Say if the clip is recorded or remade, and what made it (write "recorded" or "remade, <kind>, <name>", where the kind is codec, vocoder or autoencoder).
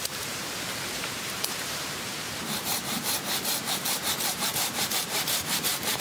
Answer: remade, vocoder, BigVGAN v2